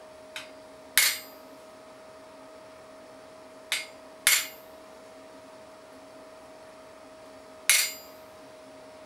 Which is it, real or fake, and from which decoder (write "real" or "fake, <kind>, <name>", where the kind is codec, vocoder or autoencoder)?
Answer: real